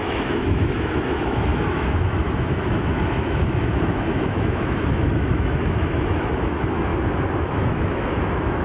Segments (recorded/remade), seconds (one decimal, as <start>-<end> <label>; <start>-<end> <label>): 0.0-6.9 remade; 6.9-7.4 recorded; 7.4-8.6 remade